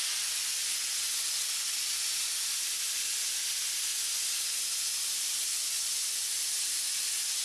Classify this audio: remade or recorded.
recorded